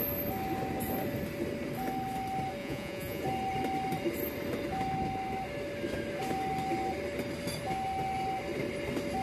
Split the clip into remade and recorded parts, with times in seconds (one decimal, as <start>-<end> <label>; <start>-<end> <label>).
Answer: 0.0-2.6 recorded; 2.6-3.2 remade; 3.2-9.2 recorded